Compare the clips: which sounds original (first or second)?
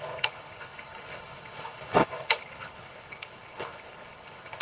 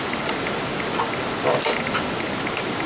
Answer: second